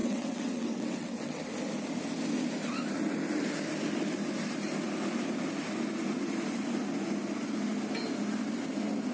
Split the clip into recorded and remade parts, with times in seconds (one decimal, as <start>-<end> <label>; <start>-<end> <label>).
0.0-1.4 remade; 1.4-9.1 recorded